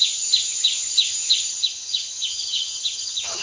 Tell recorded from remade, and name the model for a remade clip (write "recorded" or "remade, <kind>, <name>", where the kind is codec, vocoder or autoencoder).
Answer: remade, vocoder, HiFi-GAN